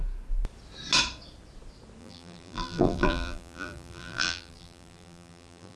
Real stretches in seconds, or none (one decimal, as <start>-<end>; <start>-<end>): 0.0-2.0